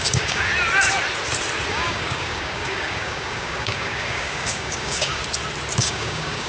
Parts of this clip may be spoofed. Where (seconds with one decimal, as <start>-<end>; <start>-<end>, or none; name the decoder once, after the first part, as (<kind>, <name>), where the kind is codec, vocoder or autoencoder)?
0.0-0.5 (codec, DAC); 1.7-5.2; 5.8-6.5